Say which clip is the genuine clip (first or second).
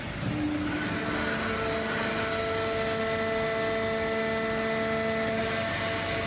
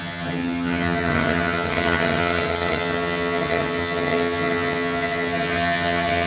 first